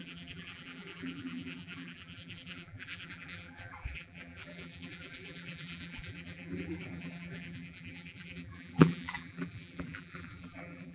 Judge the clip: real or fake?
fake